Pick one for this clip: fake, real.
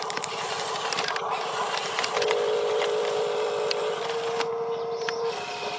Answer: real